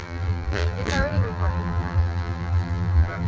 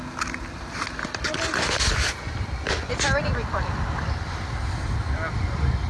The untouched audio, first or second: second